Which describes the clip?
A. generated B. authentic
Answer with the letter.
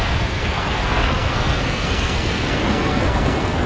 A